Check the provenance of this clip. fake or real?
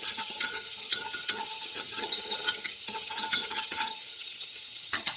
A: fake